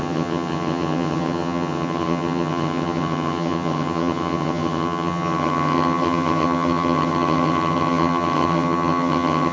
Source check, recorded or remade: remade